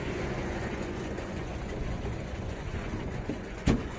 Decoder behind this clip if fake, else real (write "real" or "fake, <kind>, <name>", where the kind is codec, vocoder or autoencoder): fake, vocoder, Vocos